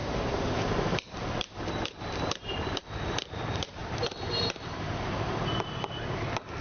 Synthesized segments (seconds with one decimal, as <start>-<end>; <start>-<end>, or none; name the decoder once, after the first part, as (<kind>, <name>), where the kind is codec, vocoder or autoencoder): 0.0-6.6 (vocoder, BigVGAN v2)